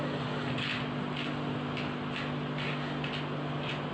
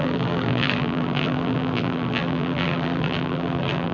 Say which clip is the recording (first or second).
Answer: first